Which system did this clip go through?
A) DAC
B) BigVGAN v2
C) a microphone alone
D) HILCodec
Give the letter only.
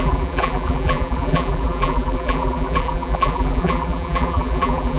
B